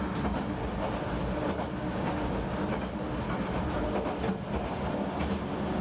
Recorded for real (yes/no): yes